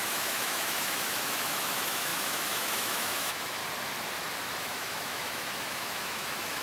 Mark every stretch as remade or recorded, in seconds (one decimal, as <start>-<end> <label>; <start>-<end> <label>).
0.0-3.6 remade; 3.6-4.6 recorded; 4.6-6.6 remade